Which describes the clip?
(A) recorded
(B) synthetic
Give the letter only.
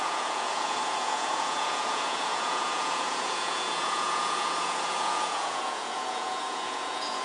B